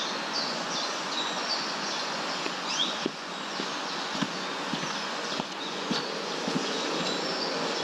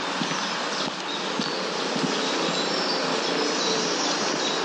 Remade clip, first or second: first